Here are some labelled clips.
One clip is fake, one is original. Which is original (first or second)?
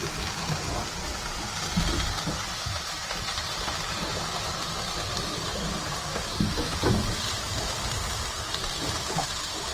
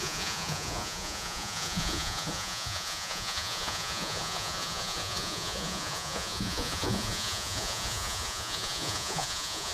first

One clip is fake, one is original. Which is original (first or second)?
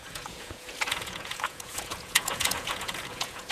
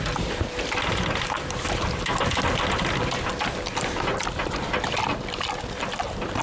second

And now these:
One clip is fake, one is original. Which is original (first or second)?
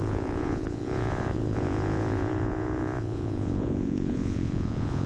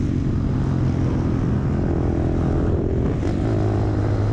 second